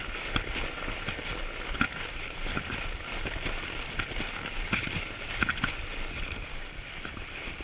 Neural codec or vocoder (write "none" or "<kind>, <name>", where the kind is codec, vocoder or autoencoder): none